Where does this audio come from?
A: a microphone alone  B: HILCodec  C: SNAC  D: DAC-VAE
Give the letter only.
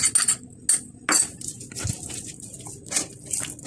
A